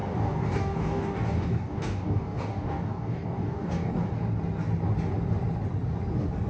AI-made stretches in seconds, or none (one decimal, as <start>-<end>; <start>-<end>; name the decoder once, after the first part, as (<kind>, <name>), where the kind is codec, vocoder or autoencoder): 0.0-3.9 (codec, DAC)